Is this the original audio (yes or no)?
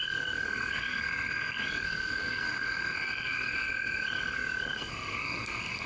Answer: no